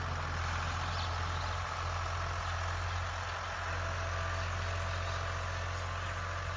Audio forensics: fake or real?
real